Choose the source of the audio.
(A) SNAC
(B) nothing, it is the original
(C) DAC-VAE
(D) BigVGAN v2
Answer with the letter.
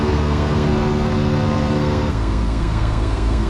A